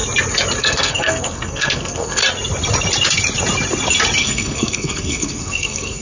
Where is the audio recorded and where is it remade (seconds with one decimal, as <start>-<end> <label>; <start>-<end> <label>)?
0.0-0.6 recorded; 0.6-2.2 remade; 2.2-4.2 recorded; 4.2-6.0 remade